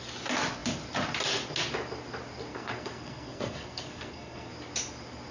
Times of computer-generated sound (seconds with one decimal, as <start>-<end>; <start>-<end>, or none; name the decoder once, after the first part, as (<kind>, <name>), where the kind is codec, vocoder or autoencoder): 2.5-4.5 (codec, SNAC)